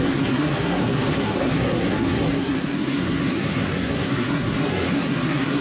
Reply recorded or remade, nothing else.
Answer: remade